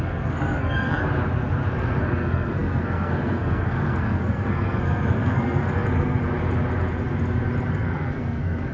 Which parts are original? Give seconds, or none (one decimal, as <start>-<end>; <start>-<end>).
1.0-1.7; 6.2-7.7